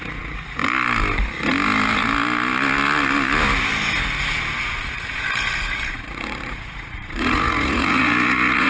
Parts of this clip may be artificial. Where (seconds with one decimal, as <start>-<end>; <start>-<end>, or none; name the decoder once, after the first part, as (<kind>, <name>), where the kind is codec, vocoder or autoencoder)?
0.0-0.6 (vocoder, Vocos); 4.6-8.7